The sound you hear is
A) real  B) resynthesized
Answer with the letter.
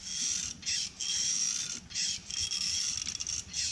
A